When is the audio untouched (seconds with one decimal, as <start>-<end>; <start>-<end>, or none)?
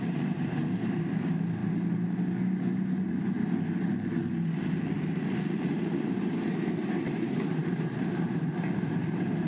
1.6-6.3